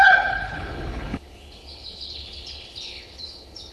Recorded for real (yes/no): no